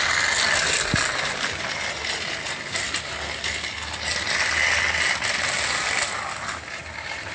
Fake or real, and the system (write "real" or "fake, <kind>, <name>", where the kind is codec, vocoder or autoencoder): real